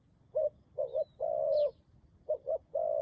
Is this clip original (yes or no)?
yes